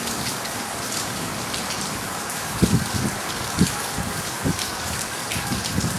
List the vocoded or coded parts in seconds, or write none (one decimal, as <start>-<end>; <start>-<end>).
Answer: 0.0-1.3; 1.9-6.0